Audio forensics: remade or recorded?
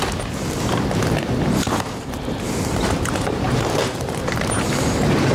remade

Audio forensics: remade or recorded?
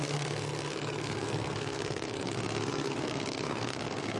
remade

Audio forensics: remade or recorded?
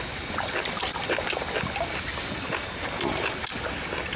recorded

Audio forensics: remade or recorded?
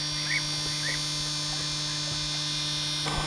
recorded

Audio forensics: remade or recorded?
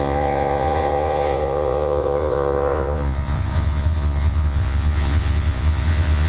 remade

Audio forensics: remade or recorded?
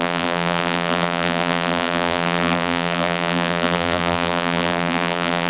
remade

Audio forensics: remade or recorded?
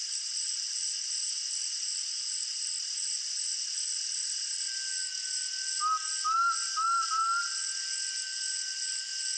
recorded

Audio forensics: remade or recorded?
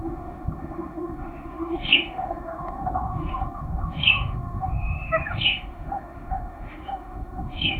remade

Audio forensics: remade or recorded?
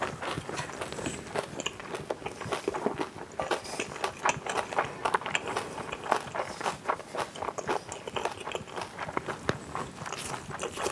recorded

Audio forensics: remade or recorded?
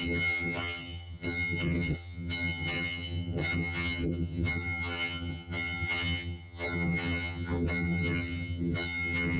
remade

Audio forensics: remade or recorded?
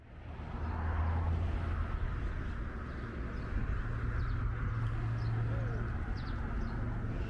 recorded